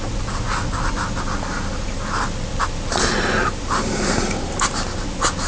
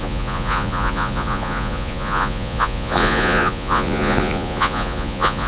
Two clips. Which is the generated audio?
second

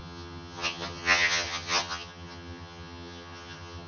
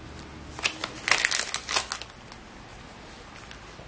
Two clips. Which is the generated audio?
first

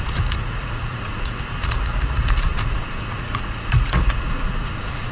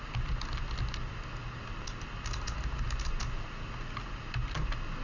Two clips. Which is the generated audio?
first